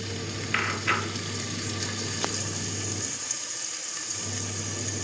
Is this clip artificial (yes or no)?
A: no